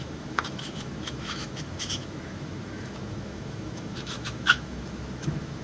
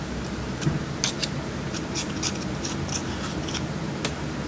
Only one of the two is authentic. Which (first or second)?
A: second